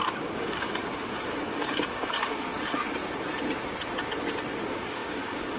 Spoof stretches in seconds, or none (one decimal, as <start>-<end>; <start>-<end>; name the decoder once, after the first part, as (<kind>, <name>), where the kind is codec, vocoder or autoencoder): 0.0-2.5 (codec, DAC); 4.6-5.6